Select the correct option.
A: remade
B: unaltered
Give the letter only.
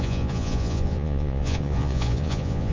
A